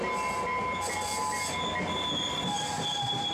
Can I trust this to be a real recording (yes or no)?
yes